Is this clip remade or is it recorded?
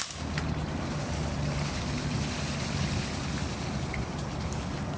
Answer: recorded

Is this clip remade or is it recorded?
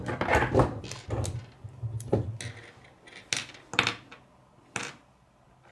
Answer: recorded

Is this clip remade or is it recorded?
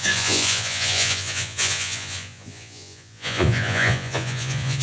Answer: remade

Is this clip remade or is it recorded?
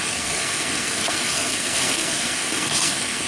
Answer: remade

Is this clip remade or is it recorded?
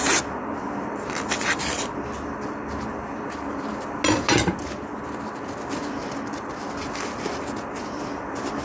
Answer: recorded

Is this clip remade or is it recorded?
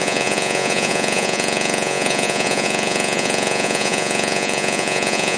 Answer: remade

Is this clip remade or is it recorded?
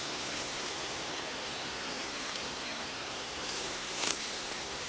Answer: remade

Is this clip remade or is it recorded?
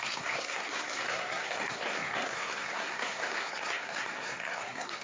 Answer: remade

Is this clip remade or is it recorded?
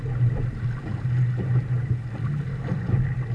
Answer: recorded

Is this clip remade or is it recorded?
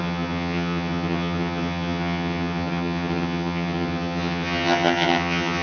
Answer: remade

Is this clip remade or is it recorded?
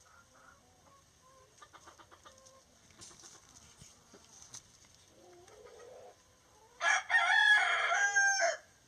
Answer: recorded